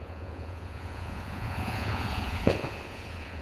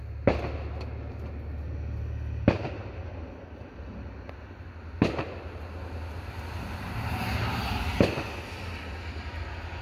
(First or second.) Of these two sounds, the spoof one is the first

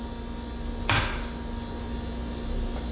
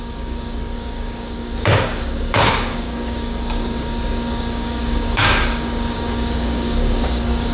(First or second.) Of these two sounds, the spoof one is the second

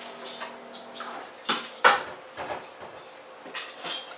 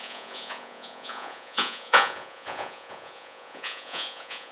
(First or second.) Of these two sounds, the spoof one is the second